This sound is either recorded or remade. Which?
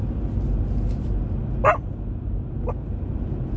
recorded